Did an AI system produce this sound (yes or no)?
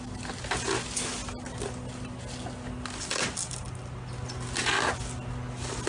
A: no